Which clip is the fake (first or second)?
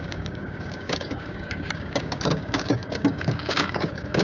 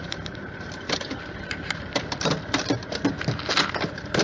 first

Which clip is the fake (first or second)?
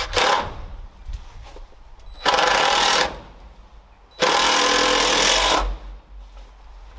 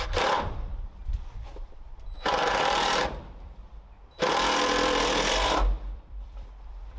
second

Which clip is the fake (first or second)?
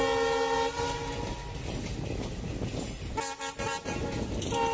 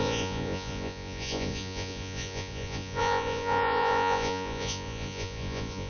second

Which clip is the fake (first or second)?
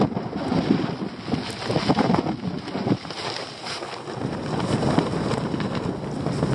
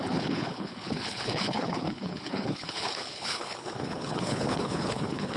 second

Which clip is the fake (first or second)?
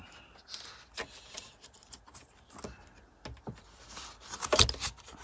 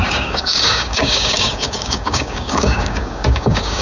second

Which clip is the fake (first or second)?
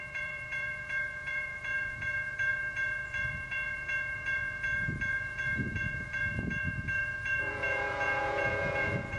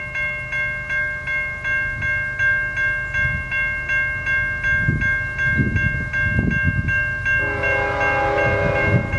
first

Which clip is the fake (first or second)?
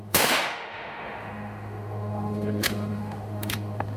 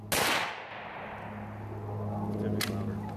first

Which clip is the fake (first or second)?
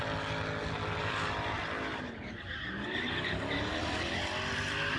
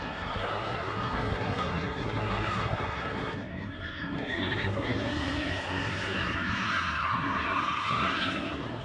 second